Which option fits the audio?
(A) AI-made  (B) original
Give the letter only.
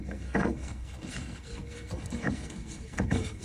A